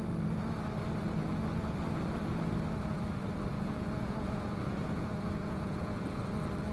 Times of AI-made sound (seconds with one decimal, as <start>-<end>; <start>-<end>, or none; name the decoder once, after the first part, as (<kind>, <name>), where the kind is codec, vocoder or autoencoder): 3.5-6.2 (vocoder, Vocos)